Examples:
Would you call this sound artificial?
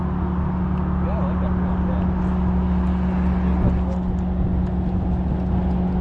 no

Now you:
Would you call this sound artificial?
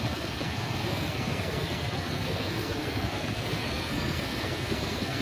yes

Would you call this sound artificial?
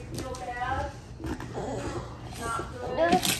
no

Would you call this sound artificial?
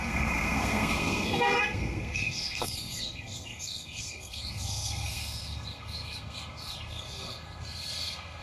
yes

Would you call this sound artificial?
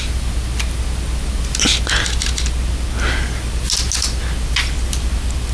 no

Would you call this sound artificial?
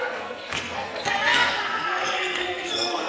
yes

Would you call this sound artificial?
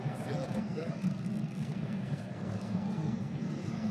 yes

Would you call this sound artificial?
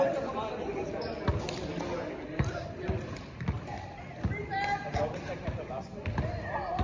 no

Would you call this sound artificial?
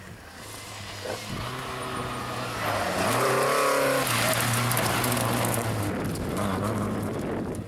no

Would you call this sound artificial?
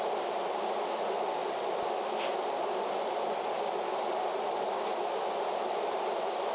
no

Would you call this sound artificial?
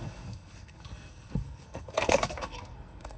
yes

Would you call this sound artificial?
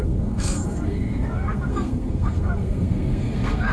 yes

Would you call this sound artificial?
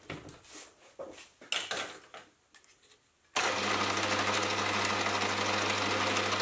no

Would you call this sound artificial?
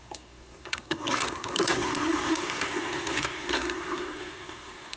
yes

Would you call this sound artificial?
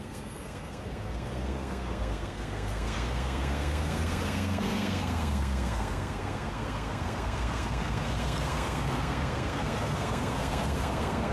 yes